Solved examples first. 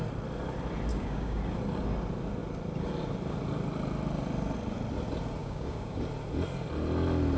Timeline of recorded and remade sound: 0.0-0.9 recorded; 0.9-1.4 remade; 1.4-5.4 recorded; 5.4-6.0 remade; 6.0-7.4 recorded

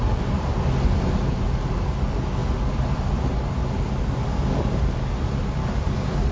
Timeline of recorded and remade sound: 0.0-4.2 recorded; 4.2-5.1 remade; 5.1-5.6 recorded; 5.6-6.3 remade

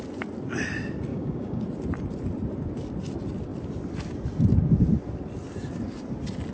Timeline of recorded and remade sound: 0.0-1.1 recorded; 1.1-1.6 remade; 1.6-6.5 recorded

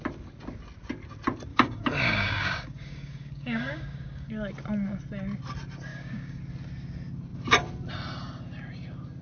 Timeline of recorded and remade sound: 0.0-1.5 recorded; 1.5-4.3 remade; 4.3-5.9 recorded; 5.9-6.4 remade; 6.4-9.2 recorded

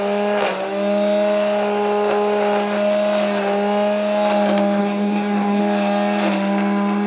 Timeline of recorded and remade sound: 0.0-4.8 recorded; 4.8-5.6 remade; 5.6-7.1 recorded